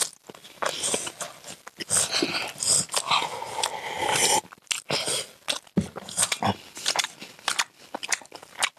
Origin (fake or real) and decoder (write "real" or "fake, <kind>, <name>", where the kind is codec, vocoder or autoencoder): real